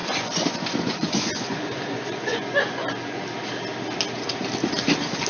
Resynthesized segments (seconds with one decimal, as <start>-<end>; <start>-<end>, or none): 0.0-3.2